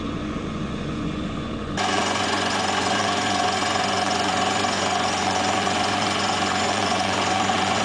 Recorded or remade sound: remade